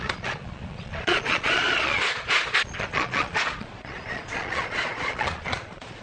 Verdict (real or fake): fake